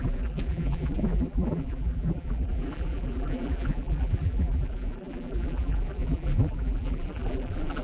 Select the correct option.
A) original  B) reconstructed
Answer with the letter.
B